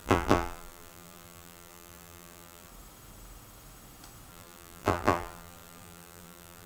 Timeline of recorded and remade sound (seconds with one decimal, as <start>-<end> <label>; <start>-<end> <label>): 0.0-2.7 remade; 2.7-4.3 recorded; 4.3-6.7 remade